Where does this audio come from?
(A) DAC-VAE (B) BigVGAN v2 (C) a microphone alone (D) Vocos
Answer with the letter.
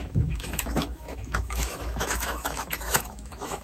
A